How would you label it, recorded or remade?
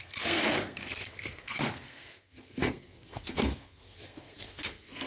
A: remade